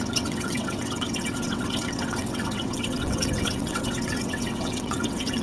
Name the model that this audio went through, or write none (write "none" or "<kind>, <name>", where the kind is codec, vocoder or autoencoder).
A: vocoder, WaveNeXt